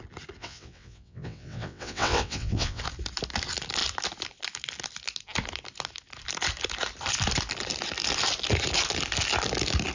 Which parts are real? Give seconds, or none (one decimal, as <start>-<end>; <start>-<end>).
0.0-0.4; 2.8-9.9